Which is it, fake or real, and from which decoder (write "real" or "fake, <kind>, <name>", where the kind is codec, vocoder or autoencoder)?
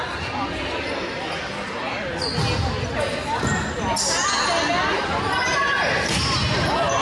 real